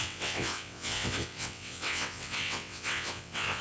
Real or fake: fake